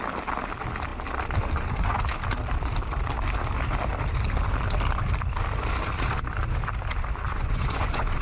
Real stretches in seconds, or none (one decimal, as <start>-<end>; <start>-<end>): 0.0-7.3